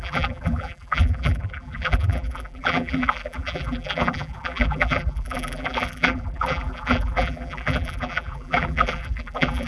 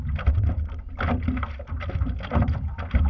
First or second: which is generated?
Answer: first